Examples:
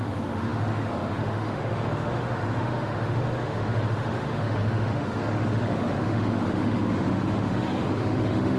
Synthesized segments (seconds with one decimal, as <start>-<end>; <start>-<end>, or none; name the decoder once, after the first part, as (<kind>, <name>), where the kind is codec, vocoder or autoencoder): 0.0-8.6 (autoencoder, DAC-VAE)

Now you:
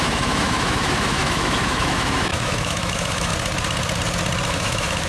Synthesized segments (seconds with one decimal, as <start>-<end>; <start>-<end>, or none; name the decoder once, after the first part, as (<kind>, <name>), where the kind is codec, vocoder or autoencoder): 0.0-3.3 (autoencoder, DAC-VAE); 4.5-5.1

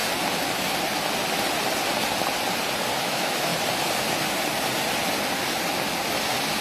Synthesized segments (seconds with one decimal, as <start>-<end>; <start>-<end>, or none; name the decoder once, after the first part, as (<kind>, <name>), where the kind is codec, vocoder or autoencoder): 3.0-3.5 (autoencoder, DAC-VAE)

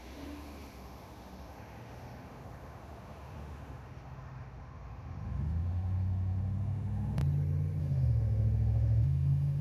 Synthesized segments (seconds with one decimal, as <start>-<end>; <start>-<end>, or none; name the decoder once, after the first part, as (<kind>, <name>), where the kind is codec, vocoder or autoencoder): 0.0-7.2 (autoencoder, DAC-VAE); 7.8-9.6